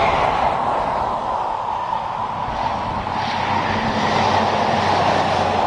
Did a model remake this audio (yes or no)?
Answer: no